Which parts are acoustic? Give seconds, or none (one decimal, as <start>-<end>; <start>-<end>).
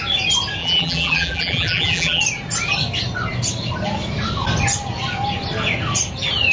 0.0-0.6; 2.2-6.5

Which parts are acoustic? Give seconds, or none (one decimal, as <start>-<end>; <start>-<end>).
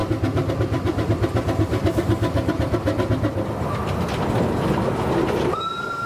0.0-6.1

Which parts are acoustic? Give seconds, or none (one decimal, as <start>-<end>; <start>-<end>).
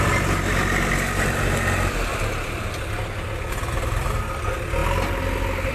4.8-5.7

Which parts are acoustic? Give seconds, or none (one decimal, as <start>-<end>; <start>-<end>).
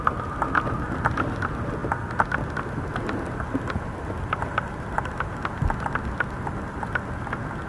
0.0-7.7